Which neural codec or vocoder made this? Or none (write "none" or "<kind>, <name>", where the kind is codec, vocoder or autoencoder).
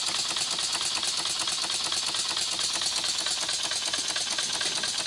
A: none